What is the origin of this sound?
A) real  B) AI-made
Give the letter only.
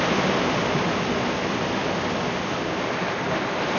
A